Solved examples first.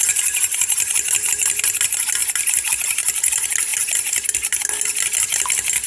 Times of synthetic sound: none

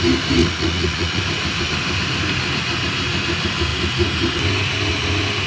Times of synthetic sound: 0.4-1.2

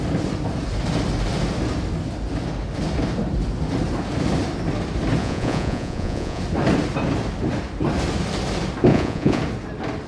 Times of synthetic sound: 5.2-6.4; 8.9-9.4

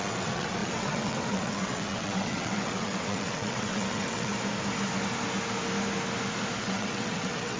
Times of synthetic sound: 0.0-4.3; 6.6-7.6

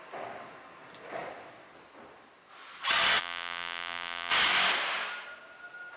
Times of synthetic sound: 3.2-4.3

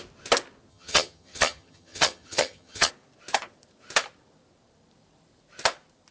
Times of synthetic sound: 0.7-2.9